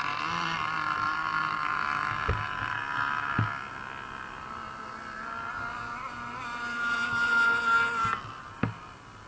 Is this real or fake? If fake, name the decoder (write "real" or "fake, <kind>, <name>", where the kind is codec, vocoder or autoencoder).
real